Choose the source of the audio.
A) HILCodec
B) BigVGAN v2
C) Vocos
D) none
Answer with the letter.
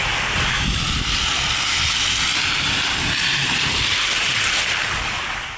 D